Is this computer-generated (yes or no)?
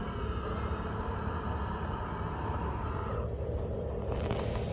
no